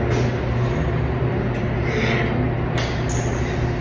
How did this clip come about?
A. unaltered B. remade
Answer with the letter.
A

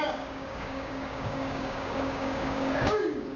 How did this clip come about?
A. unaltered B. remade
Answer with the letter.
B